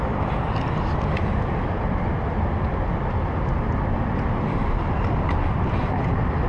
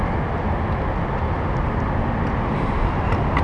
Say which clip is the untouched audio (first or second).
second